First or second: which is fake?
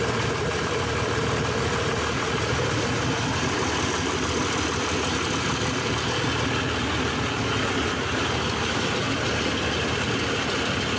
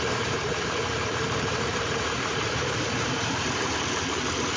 second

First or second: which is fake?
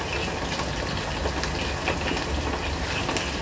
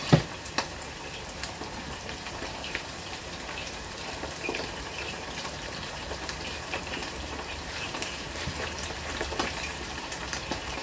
second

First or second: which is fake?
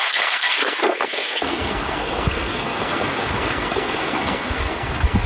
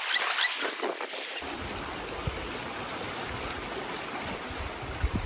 first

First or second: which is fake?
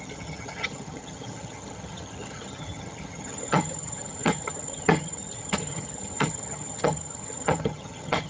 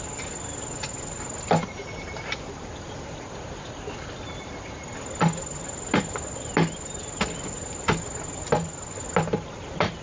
first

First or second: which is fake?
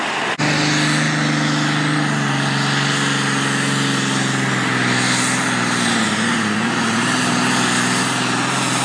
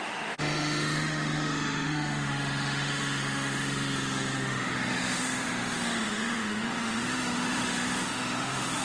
second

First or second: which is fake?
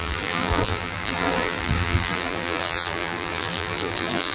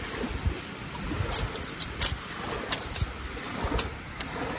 first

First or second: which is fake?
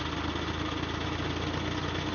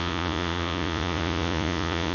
second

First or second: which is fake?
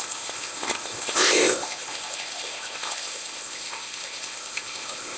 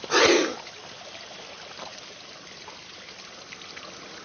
first